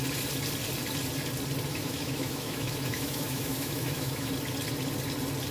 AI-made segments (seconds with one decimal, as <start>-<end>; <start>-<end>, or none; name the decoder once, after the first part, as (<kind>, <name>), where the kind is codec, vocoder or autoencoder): 1.7-4.3 (autoencoder, DAC-VAE)